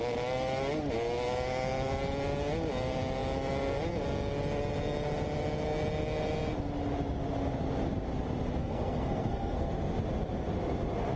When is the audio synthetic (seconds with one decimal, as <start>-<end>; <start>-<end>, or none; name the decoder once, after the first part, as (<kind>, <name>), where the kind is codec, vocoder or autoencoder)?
8.6-9.7 (codec, SNAC)